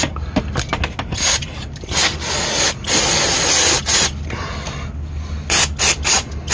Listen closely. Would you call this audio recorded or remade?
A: recorded